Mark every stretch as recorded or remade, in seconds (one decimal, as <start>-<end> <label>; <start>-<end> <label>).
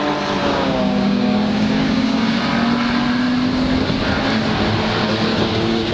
0.0-0.4 recorded; 0.4-2.4 remade; 2.4-5.3 recorded; 5.3-5.9 remade